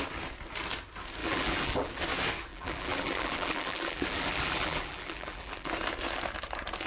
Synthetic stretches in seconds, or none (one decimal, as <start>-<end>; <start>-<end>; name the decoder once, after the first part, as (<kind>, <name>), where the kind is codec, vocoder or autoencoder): 1.2-1.9 (vocoder, BigVGAN v2); 2.5-5.7